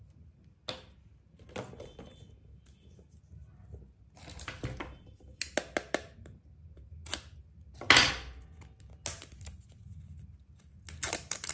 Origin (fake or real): real